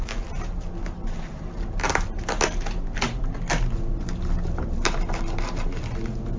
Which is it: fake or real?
real